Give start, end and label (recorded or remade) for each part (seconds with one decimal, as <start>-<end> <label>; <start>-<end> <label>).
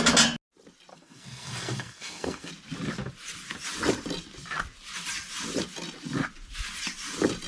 0.0-0.9 recorded; 0.9-2.5 remade; 2.5-7.5 recorded